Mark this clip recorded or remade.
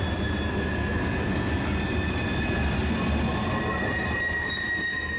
recorded